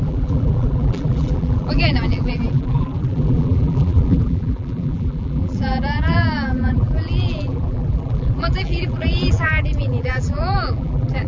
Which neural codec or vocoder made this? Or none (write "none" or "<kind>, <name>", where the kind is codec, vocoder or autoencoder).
vocoder, BigVGAN v2